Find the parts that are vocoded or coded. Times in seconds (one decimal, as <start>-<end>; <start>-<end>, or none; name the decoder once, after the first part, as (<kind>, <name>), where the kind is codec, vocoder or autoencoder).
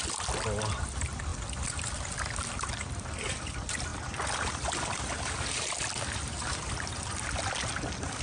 none